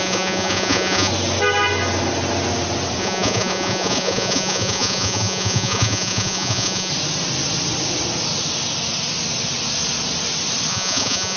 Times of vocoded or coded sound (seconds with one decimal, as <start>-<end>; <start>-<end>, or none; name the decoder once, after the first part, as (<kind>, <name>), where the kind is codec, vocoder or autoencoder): 0.0-1.1 (vocoder, Vocos); 3.0-6.9; 10.7-11.4